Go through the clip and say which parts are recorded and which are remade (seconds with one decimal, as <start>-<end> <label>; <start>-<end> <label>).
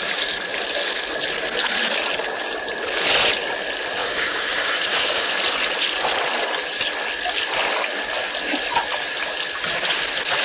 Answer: 0.0-4.0 recorded; 4.0-5.3 remade; 5.3-10.4 recorded